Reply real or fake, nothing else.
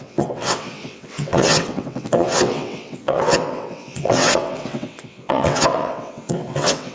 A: fake